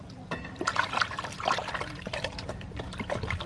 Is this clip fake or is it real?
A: real